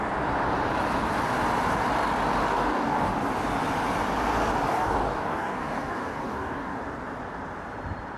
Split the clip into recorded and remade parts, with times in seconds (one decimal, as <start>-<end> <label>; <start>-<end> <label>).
0.0-2.5 recorded; 2.5-3.1 remade; 3.1-4.7 recorded; 4.7-6.8 remade; 6.8-8.2 recorded